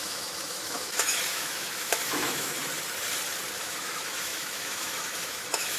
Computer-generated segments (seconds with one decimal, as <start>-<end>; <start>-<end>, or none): 0.0-2.6; 3.6-5.8